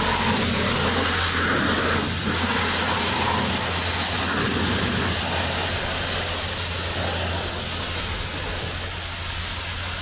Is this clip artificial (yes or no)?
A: no